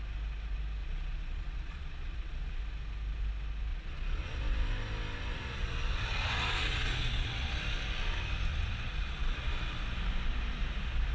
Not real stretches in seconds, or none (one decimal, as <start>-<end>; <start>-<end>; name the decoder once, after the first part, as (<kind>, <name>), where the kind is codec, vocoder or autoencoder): 0.8-2.6 (vocoder, Vocos); 3.7-4.4; 5.3-7.6; 8.5-9.5